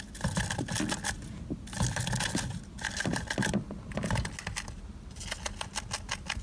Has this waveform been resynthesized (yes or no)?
no